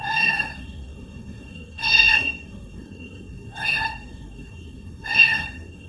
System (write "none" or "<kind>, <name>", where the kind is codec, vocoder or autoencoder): codec, SNAC